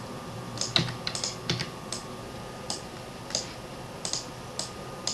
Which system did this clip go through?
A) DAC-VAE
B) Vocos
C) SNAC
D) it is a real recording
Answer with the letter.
D